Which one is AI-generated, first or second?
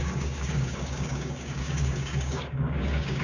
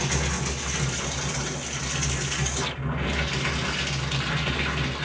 first